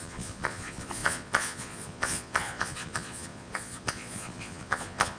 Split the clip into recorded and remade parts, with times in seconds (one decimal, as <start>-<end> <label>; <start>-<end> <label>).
0.0-5.2 remade